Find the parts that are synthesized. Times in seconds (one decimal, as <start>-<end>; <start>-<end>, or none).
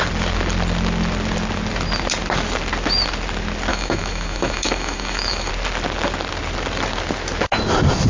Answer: 3.7-5.5